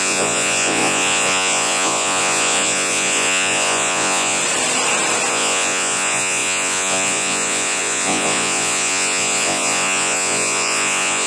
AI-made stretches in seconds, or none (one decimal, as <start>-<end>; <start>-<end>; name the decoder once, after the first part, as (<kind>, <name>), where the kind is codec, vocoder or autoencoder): 0.0-4.4 (vocoder, Vocos); 5.3-11.3